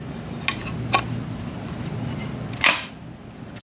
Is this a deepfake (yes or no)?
no